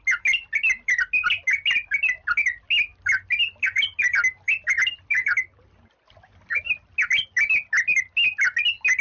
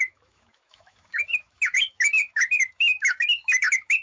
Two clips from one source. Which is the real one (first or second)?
first